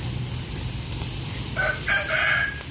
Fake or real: real